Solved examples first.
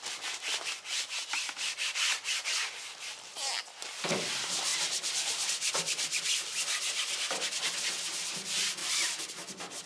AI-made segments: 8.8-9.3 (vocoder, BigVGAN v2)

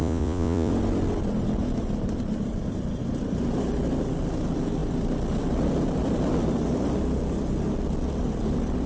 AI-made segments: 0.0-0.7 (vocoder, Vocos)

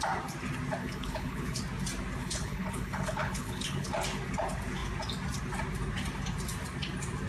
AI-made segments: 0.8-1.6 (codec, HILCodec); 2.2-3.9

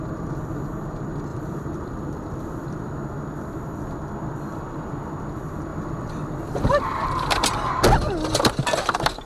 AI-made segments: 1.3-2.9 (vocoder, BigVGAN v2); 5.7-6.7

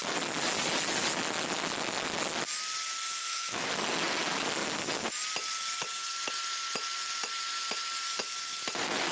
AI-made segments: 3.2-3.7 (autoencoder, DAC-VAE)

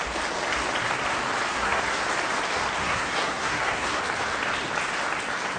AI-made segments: 1.5-2.0 (codec, SNAC); 2.8-4.0

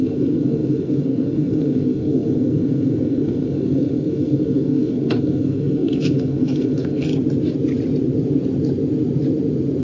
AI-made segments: 0.0-7.1 (codec, SNAC)